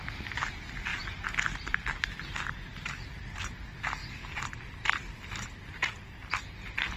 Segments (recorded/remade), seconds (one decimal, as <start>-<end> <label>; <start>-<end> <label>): 0.0-0.9 recorded; 0.9-2.1 remade; 2.1-2.7 recorded; 2.7-3.2 remade; 3.2-4.0 recorded; 4.0-6.4 remade; 6.4-7.0 recorded